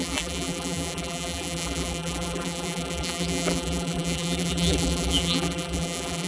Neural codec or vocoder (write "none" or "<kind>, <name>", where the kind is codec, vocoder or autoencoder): vocoder, BigVGAN v2